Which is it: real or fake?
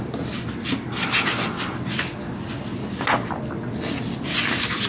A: real